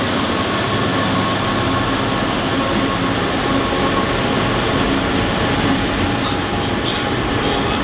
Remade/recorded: recorded